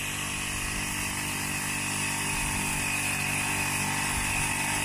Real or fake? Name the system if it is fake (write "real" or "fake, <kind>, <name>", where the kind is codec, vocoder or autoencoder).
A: real